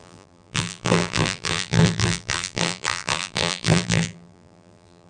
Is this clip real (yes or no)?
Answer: no